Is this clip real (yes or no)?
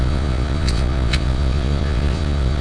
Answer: no